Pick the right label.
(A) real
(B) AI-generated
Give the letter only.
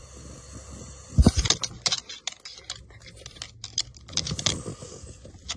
A